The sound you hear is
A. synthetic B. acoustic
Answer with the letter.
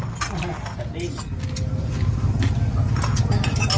B